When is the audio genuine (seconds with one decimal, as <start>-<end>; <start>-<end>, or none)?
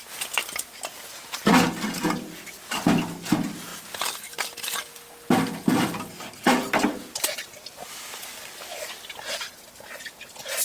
0.0-10.6